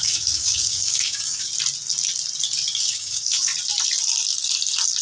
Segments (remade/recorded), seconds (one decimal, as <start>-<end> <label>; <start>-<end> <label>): 0.0-1.5 remade; 1.5-2.8 recorded; 2.8-3.5 remade; 3.5-5.0 recorded